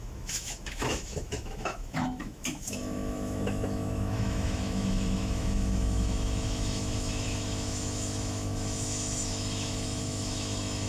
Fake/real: fake